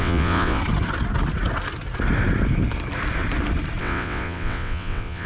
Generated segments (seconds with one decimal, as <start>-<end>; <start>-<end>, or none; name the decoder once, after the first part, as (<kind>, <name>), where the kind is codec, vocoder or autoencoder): 0.0-0.6 (vocoder, WaveNeXt); 3.8-5.3